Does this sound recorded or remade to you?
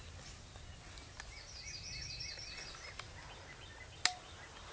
recorded